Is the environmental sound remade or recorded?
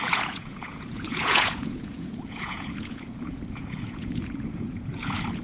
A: remade